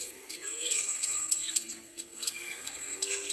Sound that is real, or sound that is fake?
fake